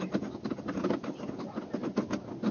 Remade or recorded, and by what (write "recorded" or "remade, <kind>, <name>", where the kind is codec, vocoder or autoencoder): recorded